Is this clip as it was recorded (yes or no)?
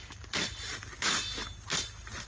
yes